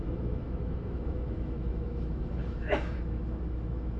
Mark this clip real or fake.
fake